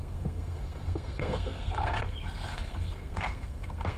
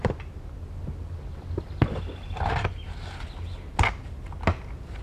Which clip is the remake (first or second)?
first